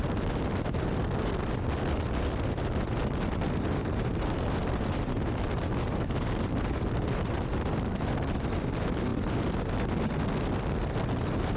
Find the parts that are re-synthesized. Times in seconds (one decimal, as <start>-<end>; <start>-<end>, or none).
3.8-5.0